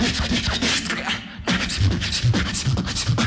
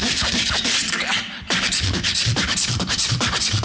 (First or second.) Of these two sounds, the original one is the first